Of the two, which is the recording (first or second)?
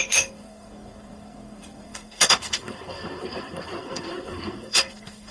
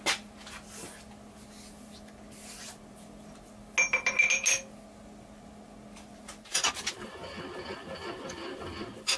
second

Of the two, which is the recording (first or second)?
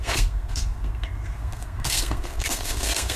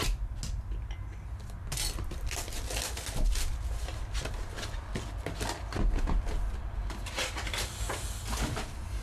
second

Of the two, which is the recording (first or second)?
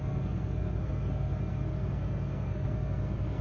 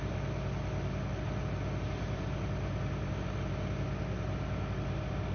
second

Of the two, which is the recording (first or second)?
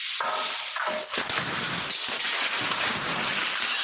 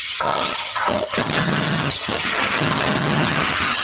first